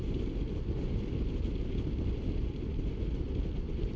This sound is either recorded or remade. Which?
recorded